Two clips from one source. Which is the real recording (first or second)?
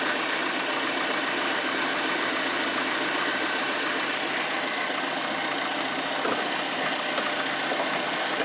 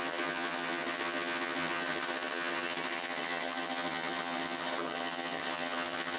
first